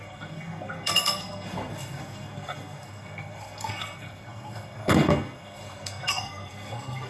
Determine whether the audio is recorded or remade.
remade